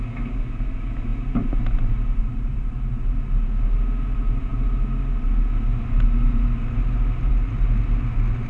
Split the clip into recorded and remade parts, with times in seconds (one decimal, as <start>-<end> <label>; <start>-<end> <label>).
0.0-8.5 recorded